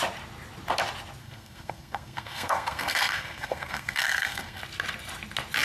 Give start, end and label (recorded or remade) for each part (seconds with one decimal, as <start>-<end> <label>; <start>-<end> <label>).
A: 0.0-1.2 recorded; 1.2-4.6 remade; 4.6-5.6 recorded